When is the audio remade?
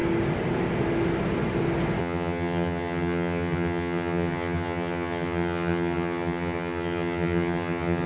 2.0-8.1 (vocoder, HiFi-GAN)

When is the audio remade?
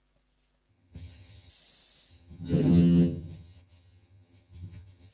0.7-1.5 (vocoder, HiFi-GAN); 2.1-5.1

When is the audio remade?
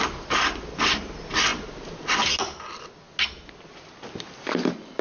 none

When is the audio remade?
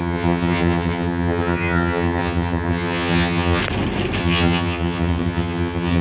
0.0-3.6 (vocoder, HiFi-GAN); 4.2-6.0